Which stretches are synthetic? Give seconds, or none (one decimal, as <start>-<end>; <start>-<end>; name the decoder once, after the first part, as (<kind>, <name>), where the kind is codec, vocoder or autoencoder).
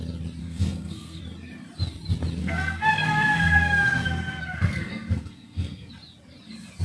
0.4-1.2 (codec, SNAC); 2.4-5.9